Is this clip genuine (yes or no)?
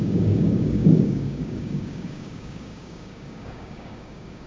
no